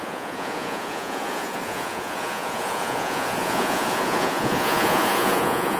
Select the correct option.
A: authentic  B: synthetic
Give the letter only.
B